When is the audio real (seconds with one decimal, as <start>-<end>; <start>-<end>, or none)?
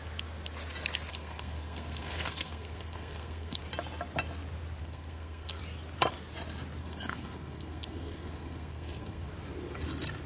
0.0-1.1; 3.6-4.8; 5.6-6.8; 9.3-10.3